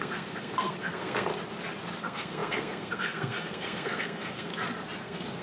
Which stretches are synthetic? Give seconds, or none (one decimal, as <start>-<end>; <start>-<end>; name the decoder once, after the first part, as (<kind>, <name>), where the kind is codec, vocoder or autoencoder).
0.0-1.3 (codec, SNAC); 2.0-4.5; 5.0-5.4